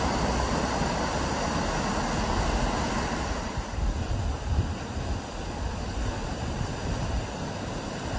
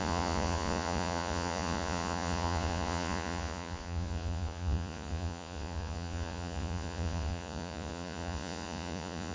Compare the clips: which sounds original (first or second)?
first